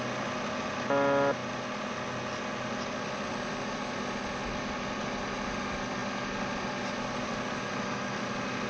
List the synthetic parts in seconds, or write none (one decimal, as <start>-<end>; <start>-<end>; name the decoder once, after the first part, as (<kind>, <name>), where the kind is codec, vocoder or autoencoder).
none